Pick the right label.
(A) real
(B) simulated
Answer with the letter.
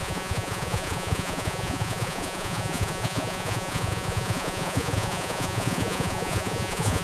B